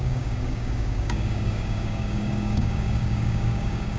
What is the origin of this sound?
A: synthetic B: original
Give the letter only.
A